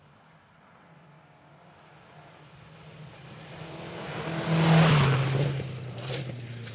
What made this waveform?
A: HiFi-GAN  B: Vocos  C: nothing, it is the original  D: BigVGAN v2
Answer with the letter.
C